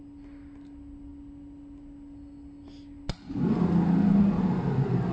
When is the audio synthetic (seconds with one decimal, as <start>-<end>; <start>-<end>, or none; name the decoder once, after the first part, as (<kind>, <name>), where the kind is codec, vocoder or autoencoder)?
none